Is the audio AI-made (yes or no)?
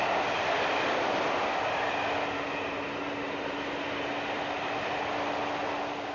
no